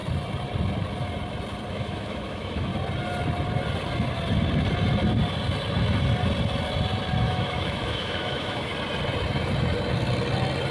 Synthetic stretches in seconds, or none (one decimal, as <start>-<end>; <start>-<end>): 1.7-2.7; 7.2-8.7